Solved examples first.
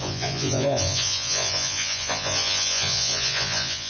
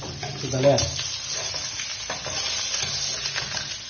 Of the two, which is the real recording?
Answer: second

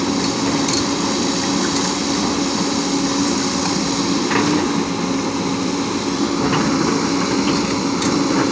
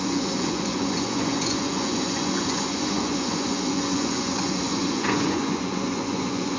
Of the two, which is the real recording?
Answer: first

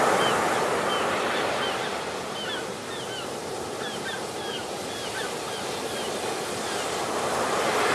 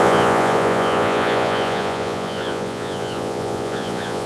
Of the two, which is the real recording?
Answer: first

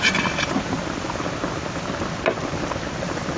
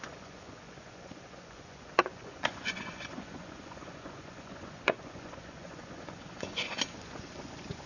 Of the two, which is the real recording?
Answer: first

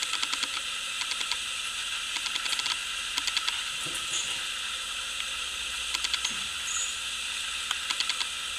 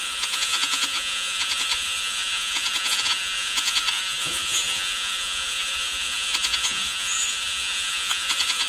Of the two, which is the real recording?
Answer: first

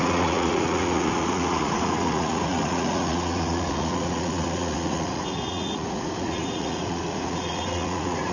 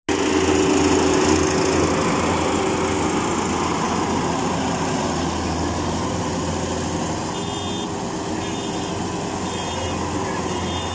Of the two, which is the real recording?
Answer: second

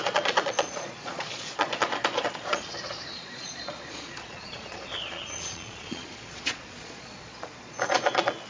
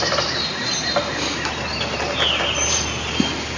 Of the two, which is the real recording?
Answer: second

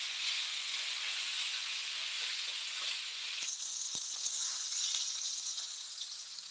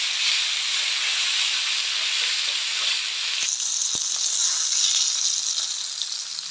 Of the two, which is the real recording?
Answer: second